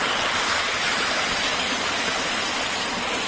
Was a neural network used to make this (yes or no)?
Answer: no